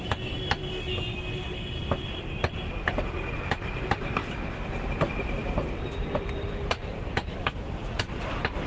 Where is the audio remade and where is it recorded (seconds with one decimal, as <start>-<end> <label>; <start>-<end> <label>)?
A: 0.0-0.6 remade; 0.6-2.4 recorded; 2.4-4.2 remade; 4.2-4.9 recorded; 4.9-5.4 remade; 5.4-6.9 recorded; 6.9-8.7 remade